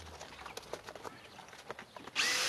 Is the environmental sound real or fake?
real